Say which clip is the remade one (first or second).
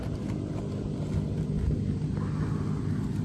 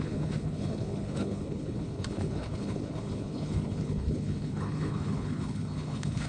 second